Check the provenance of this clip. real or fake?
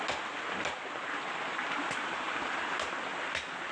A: real